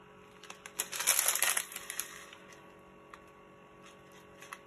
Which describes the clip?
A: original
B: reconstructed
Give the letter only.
A